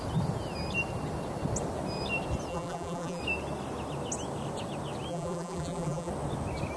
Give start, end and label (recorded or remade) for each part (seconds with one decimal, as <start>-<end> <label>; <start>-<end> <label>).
0.0-2.5 recorded; 2.5-3.2 remade; 3.2-5.1 recorded; 5.1-6.1 remade; 6.1-6.8 recorded